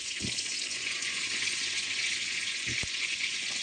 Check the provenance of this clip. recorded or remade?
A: remade